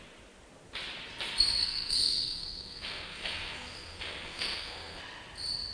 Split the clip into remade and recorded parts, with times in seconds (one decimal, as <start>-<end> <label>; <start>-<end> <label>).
0.0-1.6 recorded; 1.6-5.0 remade; 5.0-5.7 recorded